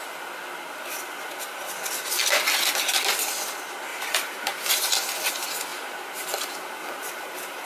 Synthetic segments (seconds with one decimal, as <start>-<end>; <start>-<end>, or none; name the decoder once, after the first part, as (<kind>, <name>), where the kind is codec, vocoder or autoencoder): 3.9-5.3 (vocoder, BigVGAN v2); 5.7-7.7